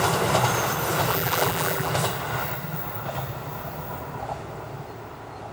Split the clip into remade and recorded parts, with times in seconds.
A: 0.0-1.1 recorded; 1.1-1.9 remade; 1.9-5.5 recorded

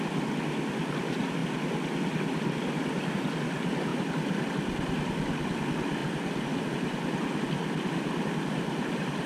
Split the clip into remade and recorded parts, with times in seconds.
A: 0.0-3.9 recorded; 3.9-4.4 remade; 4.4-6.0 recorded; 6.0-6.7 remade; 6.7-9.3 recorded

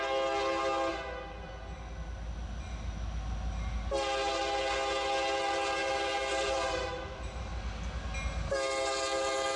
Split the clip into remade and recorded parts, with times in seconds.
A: 0.0-0.9 recorded; 0.9-1.5 remade; 1.5-5.8 recorded; 5.8-7.6 remade; 7.6-9.6 recorded

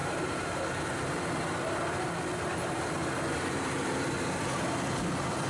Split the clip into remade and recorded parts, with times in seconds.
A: 0.0-0.6 remade; 0.6-5.5 recorded